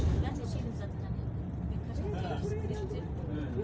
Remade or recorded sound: recorded